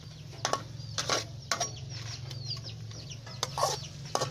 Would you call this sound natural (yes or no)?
yes